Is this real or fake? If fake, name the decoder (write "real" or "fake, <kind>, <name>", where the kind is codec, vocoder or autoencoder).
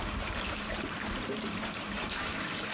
fake, vocoder, BigVGAN v2